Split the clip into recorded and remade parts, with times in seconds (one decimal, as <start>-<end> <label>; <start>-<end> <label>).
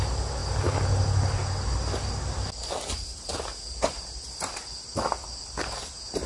0.0-6.3 recorded